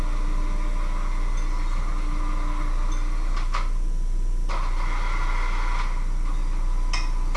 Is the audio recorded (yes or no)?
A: yes